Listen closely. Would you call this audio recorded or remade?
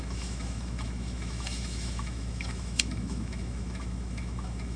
remade